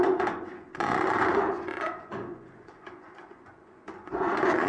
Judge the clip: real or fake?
fake